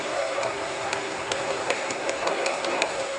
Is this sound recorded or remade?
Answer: remade